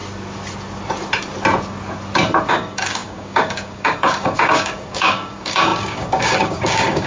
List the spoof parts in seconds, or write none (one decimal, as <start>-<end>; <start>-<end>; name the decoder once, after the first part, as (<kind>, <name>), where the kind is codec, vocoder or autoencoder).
2.5-7.1 (codec, DAC)